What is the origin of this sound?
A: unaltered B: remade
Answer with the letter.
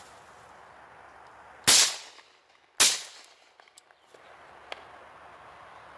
A